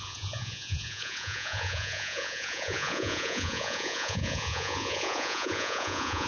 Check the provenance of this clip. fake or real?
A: fake